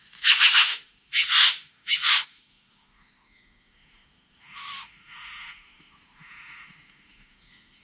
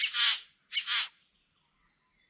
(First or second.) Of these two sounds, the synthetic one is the first